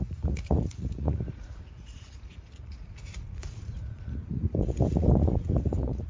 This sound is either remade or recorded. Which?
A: remade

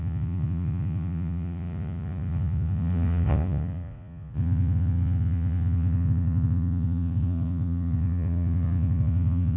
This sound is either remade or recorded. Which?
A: remade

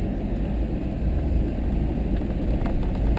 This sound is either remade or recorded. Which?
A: recorded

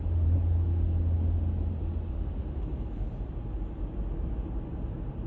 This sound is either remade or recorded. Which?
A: recorded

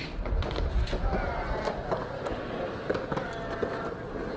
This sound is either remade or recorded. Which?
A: recorded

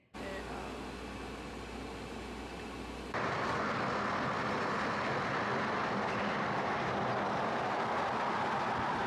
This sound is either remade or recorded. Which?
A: recorded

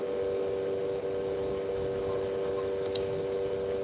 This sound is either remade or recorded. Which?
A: recorded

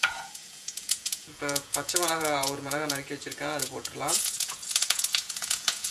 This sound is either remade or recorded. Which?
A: remade